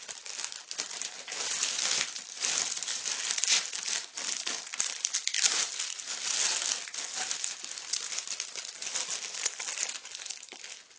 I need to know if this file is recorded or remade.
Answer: recorded